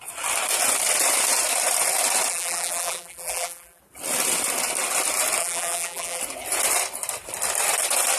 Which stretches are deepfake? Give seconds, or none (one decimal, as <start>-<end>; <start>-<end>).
2.3-3.8; 5.4-6.2